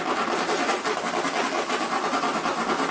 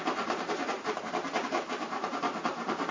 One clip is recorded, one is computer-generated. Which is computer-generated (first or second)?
second